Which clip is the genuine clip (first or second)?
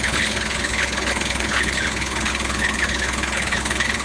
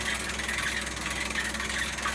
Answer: second